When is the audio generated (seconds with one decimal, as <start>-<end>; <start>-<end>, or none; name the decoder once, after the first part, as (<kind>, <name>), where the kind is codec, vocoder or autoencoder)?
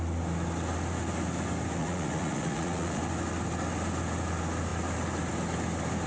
1.8-3.0 (vocoder, Vocos)